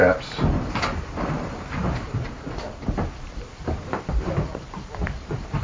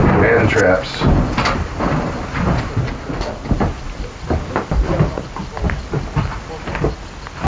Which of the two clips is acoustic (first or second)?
second